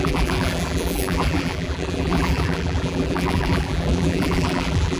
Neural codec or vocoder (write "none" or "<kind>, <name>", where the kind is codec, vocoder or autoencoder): vocoder, BigVGAN v2